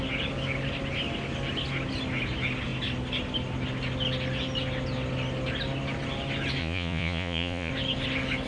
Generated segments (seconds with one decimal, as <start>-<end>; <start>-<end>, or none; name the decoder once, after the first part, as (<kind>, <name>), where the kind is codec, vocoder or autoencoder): 6.6-7.7 (vocoder, Vocos)